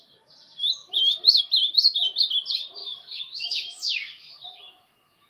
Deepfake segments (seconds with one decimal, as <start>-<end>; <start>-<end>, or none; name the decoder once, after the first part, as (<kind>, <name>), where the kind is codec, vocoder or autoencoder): 2.8-5.3 (autoencoder, DAC-VAE)